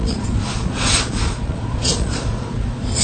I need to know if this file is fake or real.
fake